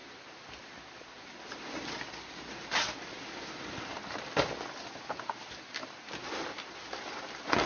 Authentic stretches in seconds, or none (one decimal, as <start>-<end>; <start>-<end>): 0.0-7.7